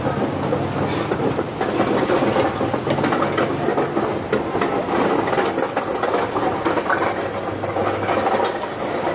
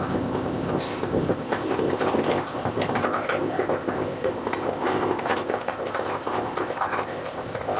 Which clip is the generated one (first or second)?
second